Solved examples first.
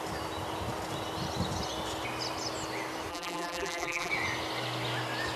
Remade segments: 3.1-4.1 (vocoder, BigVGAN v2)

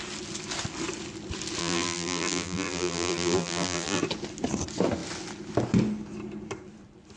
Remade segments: 1.6-4.0 (vocoder, BigVGAN v2)

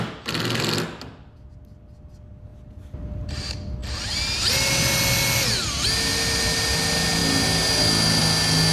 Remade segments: 2.5-3.4 (vocoder, BigVGAN v2)

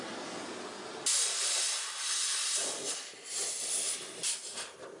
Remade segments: 1.1-4.1 (vocoder, BigVGAN v2)